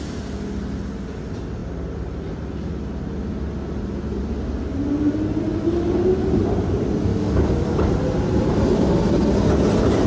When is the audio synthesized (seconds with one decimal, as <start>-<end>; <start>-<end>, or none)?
7.1-7.9